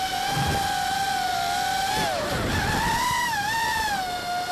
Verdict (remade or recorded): recorded